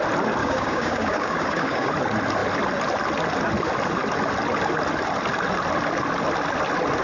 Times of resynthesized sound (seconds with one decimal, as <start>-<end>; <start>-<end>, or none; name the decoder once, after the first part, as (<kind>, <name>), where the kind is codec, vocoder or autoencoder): 0.4-1.9 (codec, DAC)